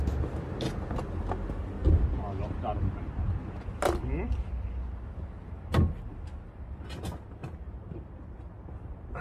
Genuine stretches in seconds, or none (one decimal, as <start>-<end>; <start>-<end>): 0.0-9.2